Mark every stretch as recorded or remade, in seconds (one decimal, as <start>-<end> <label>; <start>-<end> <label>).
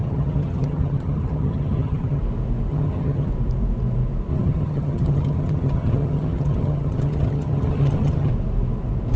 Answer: 0.0-2.2 remade; 2.2-2.7 recorded; 2.7-3.3 remade; 3.3-4.3 recorded; 4.3-8.3 remade; 8.3-9.2 recorded